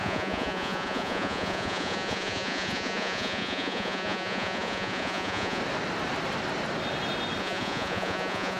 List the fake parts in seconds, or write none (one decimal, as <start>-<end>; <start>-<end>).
0.0-5.6; 7.4-8.6